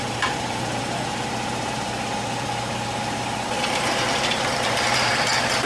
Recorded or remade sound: remade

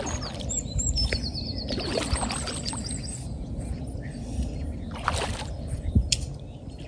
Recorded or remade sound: recorded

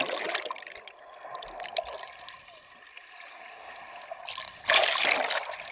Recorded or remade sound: recorded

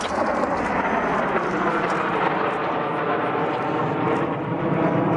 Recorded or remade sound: recorded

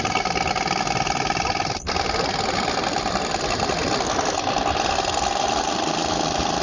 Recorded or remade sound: remade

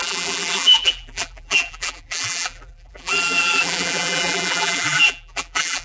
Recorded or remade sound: remade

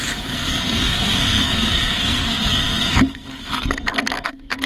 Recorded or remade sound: remade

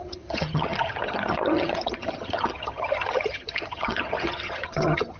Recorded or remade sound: remade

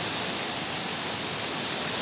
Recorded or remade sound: recorded